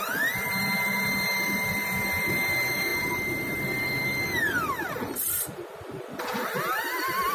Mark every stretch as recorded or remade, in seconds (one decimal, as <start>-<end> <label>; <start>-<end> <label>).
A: 0.0-7.3 remade